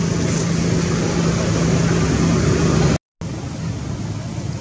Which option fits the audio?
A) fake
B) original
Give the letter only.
B